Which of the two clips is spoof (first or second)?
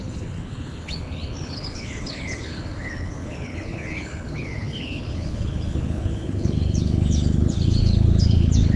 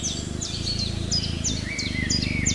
first